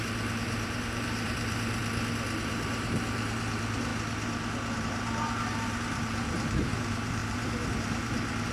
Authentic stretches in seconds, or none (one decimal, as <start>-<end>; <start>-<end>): 1.8-2.4; 3.9-4.8